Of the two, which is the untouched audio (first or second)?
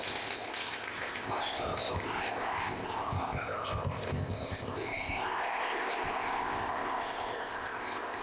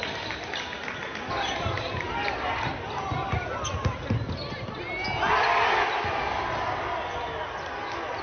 second